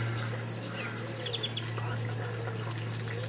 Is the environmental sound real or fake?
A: real